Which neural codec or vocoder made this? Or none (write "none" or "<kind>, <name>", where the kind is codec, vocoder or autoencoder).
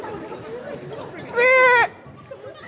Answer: none